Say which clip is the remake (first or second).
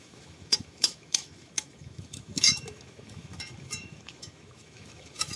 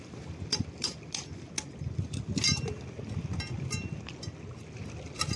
first